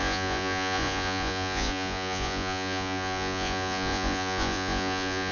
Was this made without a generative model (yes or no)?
no